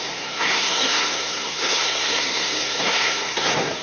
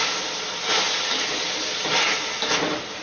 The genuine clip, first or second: second